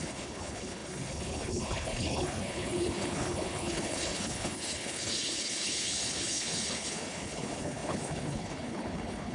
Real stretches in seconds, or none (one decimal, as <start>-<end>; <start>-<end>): none